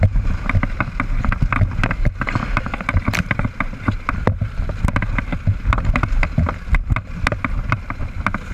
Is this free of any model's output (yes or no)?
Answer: yes